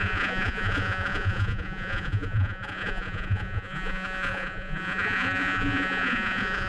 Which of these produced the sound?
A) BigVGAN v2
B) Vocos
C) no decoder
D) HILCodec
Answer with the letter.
B